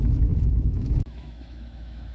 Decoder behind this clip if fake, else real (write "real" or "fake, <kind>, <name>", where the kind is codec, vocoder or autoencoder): fake, autoencoder, DAC-VAE